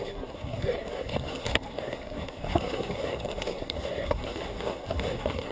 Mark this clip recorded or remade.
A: remade